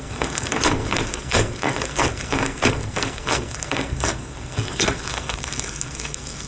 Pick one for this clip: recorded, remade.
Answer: remade